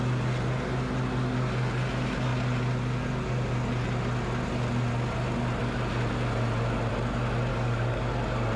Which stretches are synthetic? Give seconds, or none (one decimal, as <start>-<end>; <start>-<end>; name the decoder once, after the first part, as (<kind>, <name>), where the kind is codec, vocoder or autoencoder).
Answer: 7.5-8.1 (codec, DAC)

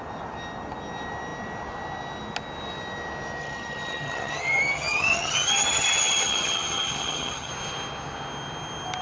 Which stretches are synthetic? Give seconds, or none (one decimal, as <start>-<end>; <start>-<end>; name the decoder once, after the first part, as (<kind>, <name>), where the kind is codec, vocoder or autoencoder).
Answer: 3.4-7.5 (vocoder, HiFi-GAN)

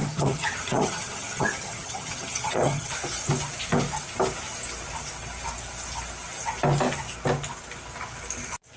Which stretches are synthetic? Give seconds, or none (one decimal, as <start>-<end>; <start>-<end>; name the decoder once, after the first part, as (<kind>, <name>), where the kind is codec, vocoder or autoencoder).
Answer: 0.0-2.9 (vocoder, HiFi-GAN)

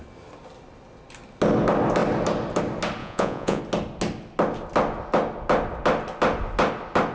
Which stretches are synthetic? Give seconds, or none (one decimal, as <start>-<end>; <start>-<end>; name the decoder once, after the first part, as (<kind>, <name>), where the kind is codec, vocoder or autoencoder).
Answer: 3.0-3.6 (vocoder, Vocos)

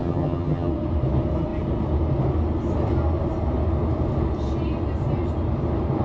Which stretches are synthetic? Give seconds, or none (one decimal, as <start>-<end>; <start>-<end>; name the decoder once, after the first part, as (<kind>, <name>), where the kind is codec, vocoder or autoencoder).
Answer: 0.0-0.7 (vocoder, HiFi-GAN)

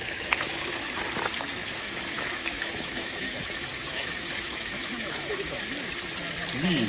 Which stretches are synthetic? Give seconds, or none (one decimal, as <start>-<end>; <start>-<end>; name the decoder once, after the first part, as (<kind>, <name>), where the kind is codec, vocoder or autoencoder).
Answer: 0.0-0.6 (autoencoder, DAC-VAE); 1.6-5.7

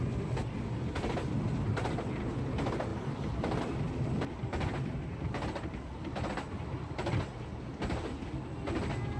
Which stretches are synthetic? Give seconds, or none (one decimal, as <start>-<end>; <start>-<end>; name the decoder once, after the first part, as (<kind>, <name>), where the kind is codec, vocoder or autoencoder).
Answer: 2.9-3.6 (vocoder, BigVGAN v2)